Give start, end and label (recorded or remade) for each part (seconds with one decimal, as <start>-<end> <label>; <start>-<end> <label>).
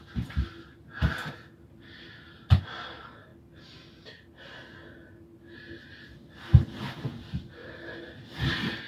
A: 0.0-3.3 recorded; 3.3-3.9 remade; 3.9-7.6 recorded; 7.6-8.4 remade; 8.4-8.9 recorded